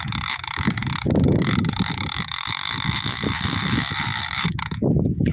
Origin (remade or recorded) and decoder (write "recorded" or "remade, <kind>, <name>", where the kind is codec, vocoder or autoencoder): remade, autoencoder, DAC-VAE